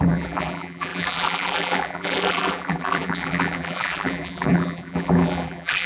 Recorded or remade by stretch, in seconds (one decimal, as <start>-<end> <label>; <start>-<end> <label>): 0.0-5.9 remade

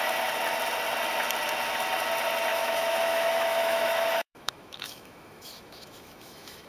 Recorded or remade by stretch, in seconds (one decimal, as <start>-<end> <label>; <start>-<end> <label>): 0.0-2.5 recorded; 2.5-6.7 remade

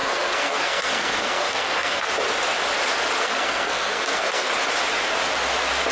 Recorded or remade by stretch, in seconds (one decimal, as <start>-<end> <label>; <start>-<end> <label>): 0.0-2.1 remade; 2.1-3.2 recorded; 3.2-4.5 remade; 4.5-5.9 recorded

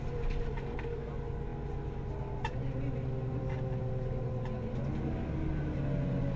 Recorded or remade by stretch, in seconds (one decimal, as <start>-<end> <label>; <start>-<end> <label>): 0.0-0.6 recorded; 0.6-1.1 remade; 1.1-6.4 recorded

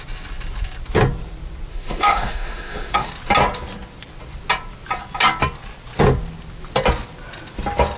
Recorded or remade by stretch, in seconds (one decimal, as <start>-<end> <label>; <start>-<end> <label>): 0.0-1.7 recorded; 1.7-3.1 remade; 3.1-8.0 recorded